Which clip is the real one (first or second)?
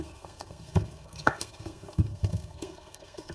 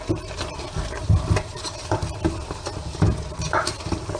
second